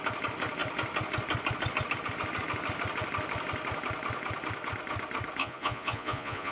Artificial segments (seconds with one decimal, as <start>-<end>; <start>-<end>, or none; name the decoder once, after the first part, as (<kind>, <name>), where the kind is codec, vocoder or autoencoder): 5.4-6.5 (vocoder, Vocos)